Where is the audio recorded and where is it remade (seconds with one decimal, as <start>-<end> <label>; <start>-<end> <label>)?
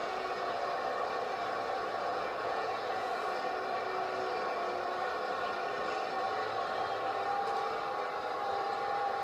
0.0-0.6 remade; 0.6-2.1 recorded; 2.1-3.1 remade; 3.1-9.2 recorded